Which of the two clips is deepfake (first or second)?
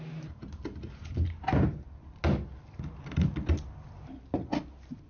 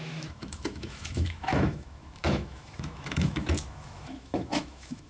second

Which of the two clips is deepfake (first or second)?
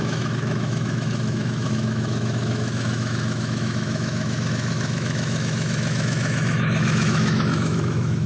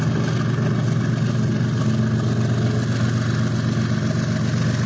first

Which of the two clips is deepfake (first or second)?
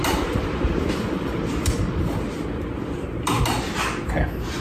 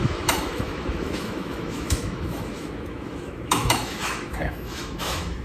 second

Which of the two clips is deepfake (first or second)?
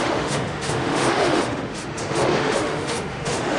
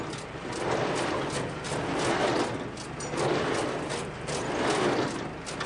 first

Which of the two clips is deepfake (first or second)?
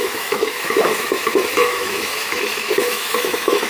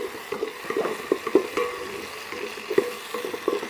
first